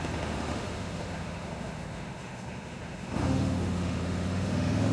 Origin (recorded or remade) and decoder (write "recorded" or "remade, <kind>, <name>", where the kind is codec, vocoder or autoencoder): remade, autoencoder, DAC-VAE